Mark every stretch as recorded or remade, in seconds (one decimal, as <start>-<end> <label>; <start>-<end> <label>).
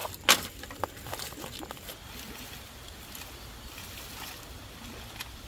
0.0-5.5 recorded